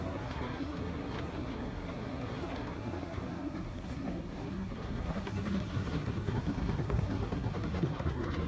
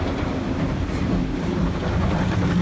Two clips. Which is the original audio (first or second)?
second